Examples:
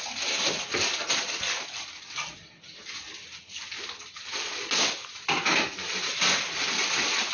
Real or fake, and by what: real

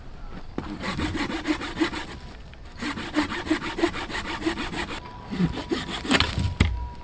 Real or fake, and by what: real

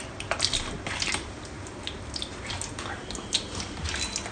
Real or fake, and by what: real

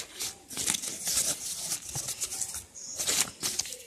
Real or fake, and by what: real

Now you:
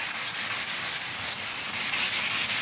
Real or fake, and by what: real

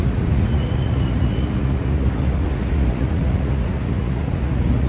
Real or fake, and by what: fake, vocoder, Vocos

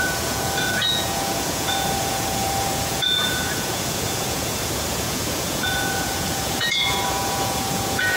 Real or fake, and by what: fake, vocoder, Vocos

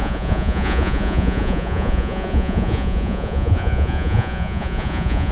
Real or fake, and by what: fake, vocoder, Vocos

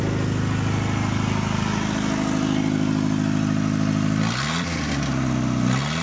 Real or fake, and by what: real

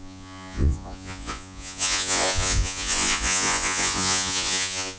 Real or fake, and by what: fake, vocoder, Vocos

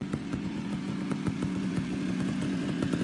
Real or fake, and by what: fake, vocoder, Vocos